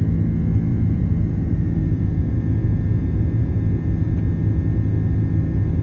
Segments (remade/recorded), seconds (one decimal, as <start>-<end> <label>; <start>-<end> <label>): 0.0-0.7 recorded; 0.7-4.2 remade; 4.2-5.8 recorded